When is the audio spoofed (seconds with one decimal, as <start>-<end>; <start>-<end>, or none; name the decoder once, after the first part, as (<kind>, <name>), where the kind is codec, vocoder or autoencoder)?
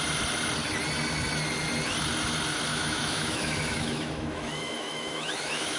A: 2.7-5.8 (autoencoder, DAC-VAE)